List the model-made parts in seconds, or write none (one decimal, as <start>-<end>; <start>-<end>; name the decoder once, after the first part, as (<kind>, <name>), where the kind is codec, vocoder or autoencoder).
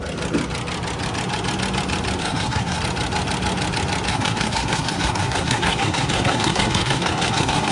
2.2-2.8 (codec, SNAC); 4.1-7.7